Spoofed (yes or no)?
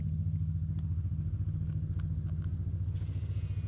no